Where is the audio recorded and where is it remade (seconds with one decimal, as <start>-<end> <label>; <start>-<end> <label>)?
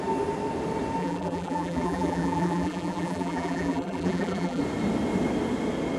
0.0-1.0 recorded; 1.0-4.6 remade; 4.6-6.0 recorded